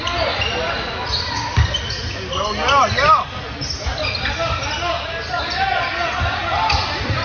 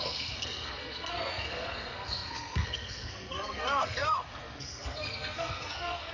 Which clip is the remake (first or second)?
second